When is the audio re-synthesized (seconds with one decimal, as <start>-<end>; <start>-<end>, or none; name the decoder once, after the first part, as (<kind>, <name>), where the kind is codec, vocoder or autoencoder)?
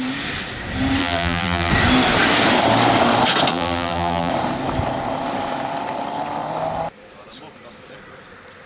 1.0-1.7 (vocoder, BigVGAN v2); 3.5-4.3